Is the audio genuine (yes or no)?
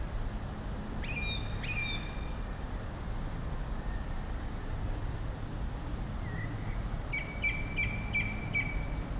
yes